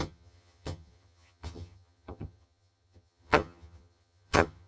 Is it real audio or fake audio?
fake